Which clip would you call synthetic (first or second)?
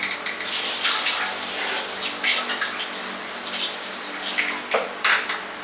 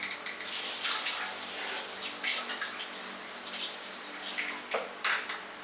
second